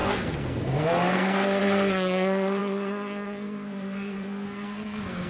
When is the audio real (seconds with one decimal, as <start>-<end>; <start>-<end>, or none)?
none